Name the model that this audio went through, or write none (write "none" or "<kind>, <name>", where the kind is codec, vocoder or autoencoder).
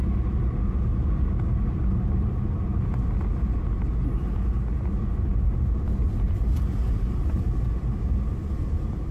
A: none